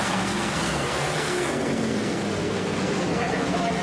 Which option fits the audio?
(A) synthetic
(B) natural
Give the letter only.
A